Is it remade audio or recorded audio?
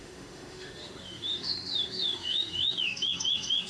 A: remade